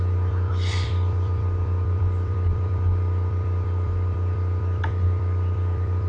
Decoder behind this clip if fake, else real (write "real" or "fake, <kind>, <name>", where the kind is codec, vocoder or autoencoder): fake, vocoder, BigVGAN v2